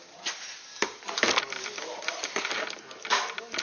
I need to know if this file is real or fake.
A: real